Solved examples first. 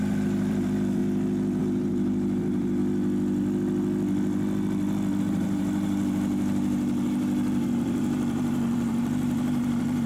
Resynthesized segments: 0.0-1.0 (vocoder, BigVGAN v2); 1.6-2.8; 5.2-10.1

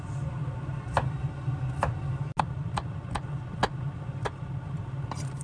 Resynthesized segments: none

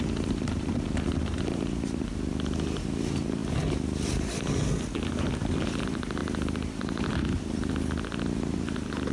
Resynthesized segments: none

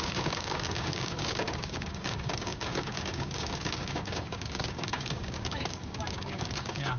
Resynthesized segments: 0.0-7.0 (codec, DAC)

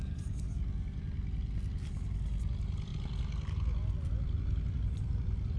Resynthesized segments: none